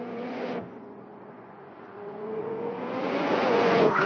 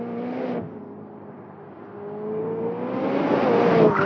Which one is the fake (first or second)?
first